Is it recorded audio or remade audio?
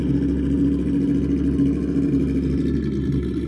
recorded